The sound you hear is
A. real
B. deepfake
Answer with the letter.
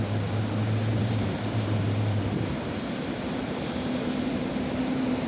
B